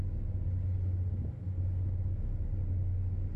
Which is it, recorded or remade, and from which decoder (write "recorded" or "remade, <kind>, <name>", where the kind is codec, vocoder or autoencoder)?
recorded